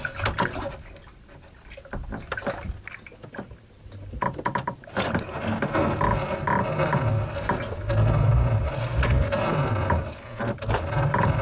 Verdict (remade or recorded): recorded